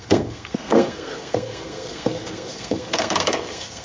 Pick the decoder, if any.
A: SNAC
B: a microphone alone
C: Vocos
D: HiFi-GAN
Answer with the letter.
A